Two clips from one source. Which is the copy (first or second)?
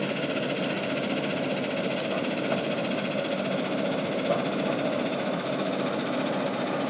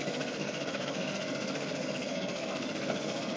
second